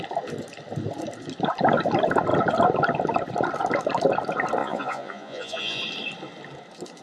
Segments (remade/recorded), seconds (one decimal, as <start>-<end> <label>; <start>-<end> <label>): 0.0-4.6 recorded; 4.6-5.8 remade; 5.8-7.0 recorded